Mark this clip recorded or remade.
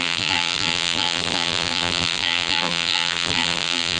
remade